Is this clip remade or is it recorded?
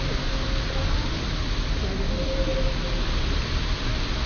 recorded